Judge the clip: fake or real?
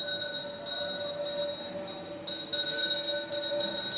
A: real